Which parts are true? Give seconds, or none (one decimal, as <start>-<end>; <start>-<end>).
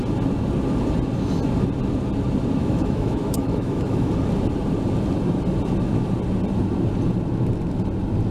0.0-2.6; 4.1-8.3